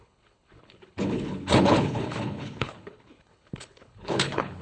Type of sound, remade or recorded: remade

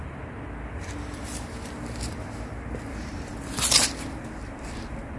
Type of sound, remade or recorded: remade